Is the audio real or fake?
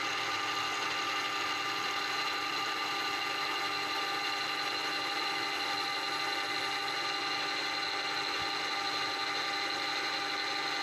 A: real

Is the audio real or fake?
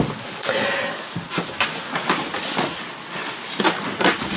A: real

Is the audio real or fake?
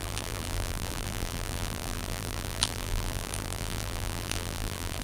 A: fake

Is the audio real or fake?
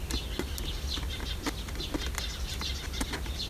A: real